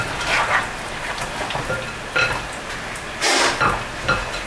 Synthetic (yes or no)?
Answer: no